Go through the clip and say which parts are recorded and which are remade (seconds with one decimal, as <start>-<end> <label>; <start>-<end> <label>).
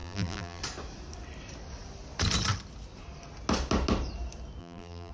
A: 0.0-0.6 remade; 0.6-4.6 recorded; 4.6-5.1 remade